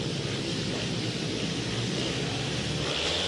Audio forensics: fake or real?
fake